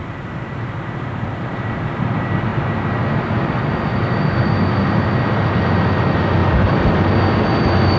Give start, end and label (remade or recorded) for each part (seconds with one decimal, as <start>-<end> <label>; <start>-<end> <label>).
0.0-2.5 remade; 2.5-5.6 recorded; 5.6-6.4 remade; 6.4-8.0 recorded